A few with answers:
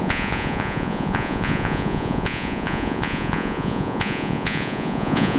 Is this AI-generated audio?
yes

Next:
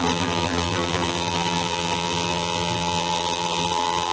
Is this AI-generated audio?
yes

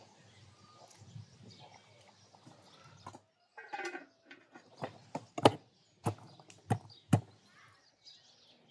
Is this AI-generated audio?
no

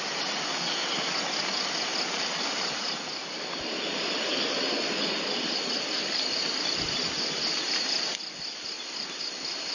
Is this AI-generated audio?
no